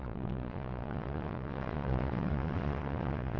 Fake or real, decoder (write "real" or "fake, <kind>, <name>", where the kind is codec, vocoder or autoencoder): fake, vocoder, Vocos